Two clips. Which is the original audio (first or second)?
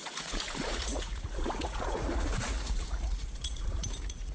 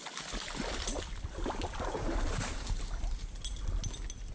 second